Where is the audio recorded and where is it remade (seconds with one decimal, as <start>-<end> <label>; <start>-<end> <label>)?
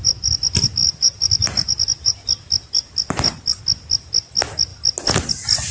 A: 0.0-0.8 recorded; 0.8-3.6 remade; 3.6-5.7 recorded